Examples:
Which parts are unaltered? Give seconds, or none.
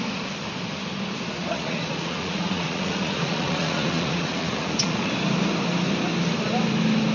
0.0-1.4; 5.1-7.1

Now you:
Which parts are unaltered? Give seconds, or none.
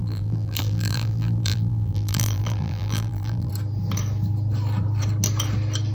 3.5-5.9